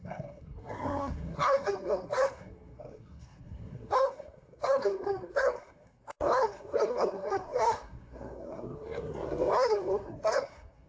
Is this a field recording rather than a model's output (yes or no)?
no